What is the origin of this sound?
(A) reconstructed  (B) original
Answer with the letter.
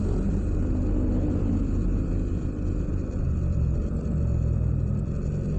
B